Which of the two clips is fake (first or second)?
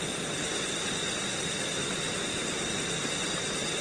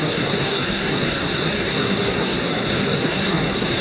second